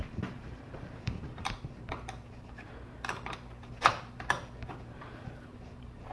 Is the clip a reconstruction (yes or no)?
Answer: yes